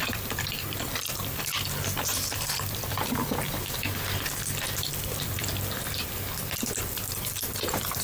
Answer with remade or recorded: remade